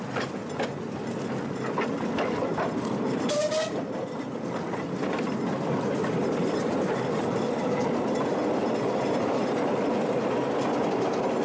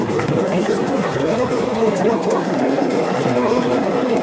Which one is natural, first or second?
first